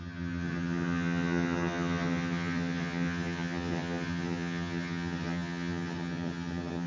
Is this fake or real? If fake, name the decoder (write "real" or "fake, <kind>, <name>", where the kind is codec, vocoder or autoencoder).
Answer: fake, vocoder, HiFi-GAN